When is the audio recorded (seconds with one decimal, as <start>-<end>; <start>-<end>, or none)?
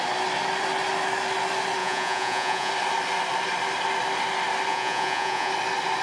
0.0-1.8; 2.7-4.7; 5.5-6.0